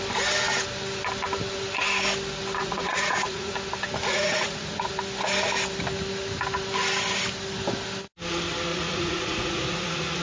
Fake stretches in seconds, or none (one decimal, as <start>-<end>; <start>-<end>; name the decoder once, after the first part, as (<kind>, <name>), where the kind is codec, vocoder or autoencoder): 2.6-3.5 (vocoder, Vocos); 4.1-4.9; 8.7-10.2

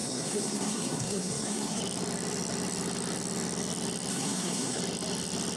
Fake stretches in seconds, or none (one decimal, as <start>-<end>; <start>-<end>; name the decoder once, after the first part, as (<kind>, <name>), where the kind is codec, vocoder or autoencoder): 0.0-1.8 (codec, SNAC); 4.1-4.8

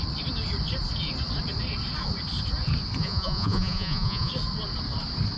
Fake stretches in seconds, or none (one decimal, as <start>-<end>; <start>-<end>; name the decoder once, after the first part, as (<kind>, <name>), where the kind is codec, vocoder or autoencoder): 3.0-4.3 (vocoder, Vocos)

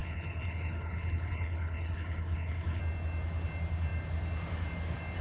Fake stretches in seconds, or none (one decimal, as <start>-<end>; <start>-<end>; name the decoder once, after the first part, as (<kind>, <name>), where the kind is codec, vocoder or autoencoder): 0.0-2.8 (codec, HILCodec)